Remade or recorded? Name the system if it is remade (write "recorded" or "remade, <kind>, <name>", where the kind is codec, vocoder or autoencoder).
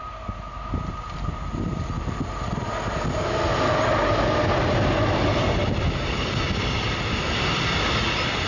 recorded